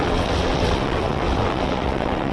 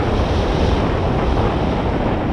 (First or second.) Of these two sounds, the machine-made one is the first